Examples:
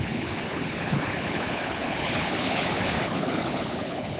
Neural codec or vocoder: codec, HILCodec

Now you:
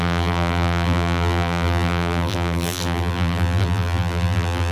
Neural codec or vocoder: vocoder, BigVGAN v2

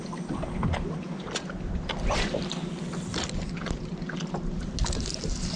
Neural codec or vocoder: none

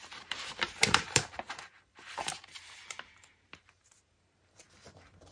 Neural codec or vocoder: vocoder, BigVGAN v2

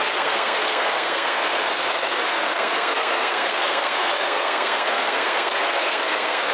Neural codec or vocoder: codec, SNAC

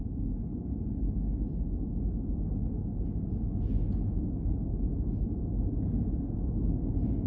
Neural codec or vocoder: none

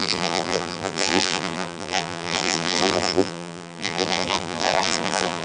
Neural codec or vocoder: vocoder, BigVGAN v2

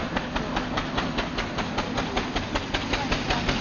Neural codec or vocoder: none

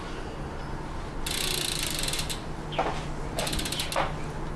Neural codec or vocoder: none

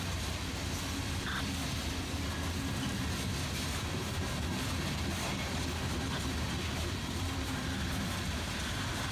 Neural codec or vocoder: none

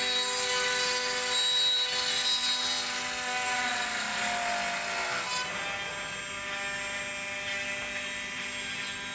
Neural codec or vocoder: none